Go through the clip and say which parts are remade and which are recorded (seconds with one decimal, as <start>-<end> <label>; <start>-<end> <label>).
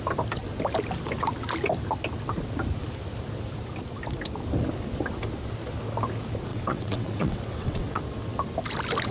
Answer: 0.0-6.5 recorded; 6.5-8.0 remade; 8.0-9.1 recorded